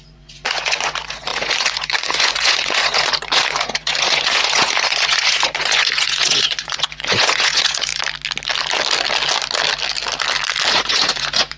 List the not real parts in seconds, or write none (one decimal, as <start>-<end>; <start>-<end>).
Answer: 0.0-7.9; 10.7-11.6